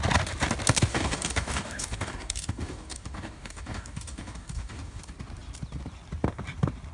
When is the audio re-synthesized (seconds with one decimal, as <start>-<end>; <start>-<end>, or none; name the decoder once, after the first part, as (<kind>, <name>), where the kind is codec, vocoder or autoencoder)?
0.9-5.0 (codec, DAC)